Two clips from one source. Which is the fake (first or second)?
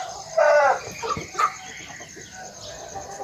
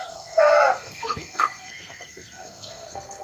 second